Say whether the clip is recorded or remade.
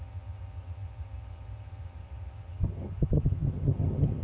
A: remade